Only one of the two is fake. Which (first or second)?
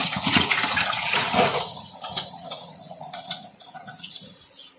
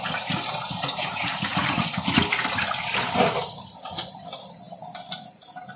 first